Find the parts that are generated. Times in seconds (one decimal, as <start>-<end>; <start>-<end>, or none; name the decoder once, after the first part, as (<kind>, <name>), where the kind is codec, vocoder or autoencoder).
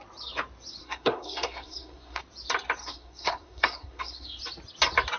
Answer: 0.8-2.2 (codec, SNAC); 2.8-4.4